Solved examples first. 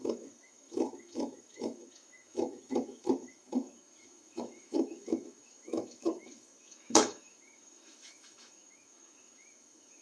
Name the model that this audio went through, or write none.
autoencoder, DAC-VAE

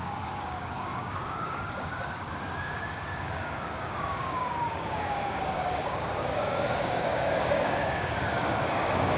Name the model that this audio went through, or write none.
codec, DAC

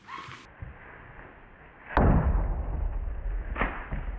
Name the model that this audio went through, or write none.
none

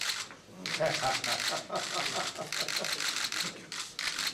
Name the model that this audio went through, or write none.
none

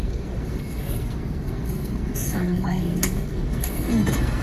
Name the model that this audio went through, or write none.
codec, SNAC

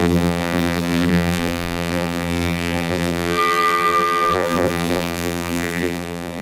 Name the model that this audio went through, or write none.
vocoder, BigVGAN v2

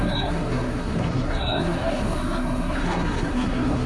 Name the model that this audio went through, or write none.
codec, SNAC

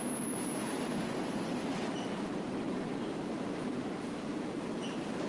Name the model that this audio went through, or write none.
vocoder, BigVGAN v2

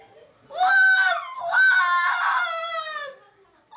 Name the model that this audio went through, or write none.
none